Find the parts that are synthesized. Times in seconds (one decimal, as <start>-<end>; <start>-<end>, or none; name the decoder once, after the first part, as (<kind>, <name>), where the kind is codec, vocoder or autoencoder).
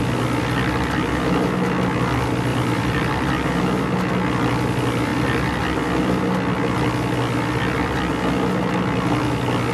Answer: 2.5-3.6 (vocoder, BigVGAN v2)